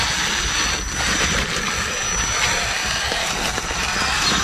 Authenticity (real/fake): real